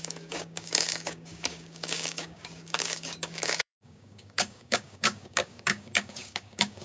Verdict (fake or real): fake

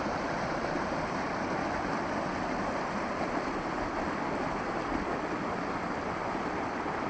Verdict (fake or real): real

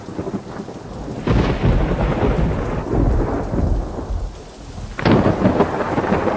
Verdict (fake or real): real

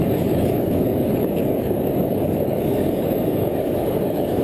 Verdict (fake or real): fake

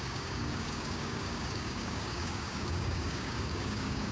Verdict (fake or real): fake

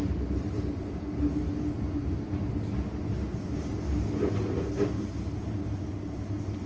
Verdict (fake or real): real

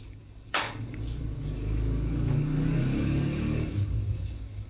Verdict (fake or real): fake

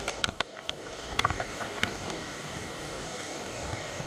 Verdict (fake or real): fake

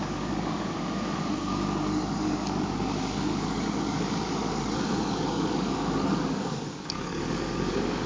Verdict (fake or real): fake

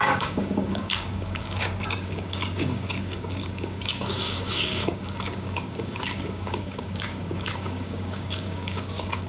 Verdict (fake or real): fake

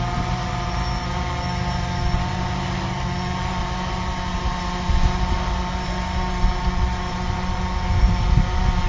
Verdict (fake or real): real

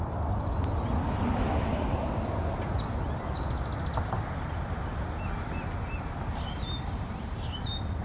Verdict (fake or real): real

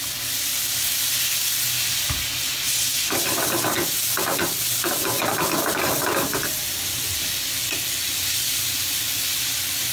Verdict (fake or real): real